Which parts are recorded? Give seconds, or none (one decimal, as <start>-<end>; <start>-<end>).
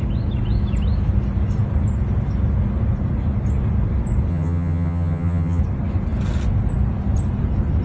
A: 0.0-4.3; 5.6-7.8